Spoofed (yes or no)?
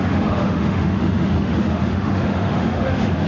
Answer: yes